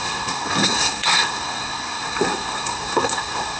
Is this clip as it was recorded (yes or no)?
no